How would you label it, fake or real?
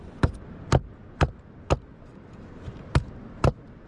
real